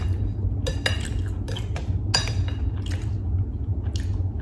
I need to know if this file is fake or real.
real